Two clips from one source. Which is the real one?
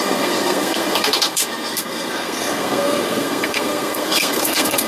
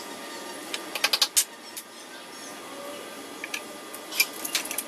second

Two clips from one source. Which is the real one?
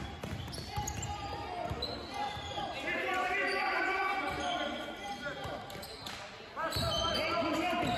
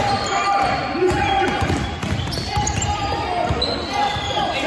first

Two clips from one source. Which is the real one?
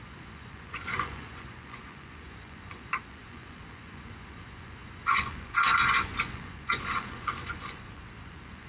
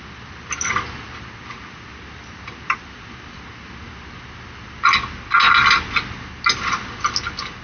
second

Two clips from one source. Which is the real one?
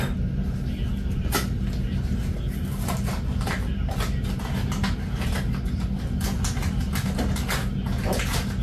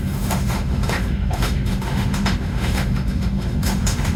first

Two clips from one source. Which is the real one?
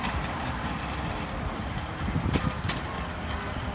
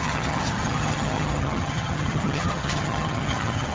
first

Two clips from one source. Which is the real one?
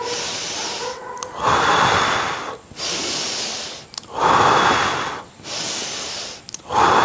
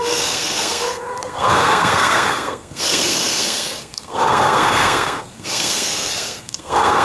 first